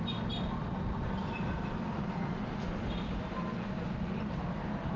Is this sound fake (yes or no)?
no